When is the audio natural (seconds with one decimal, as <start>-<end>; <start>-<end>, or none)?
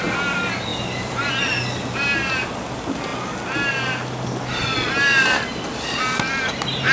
0.0-0.7; 1.3-6.9